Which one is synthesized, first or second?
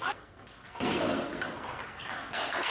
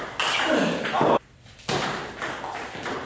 first